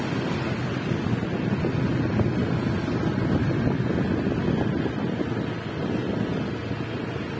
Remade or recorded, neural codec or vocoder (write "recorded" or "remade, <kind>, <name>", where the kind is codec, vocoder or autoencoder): recorded